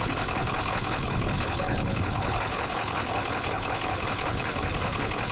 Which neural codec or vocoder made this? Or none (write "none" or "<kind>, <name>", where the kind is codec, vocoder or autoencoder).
codec, HILCodec